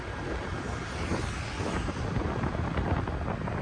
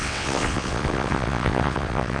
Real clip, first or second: first